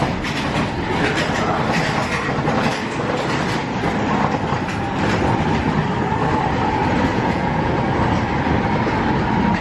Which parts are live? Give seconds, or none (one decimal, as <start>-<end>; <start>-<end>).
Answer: 0.0-7.1; 7.7-9.6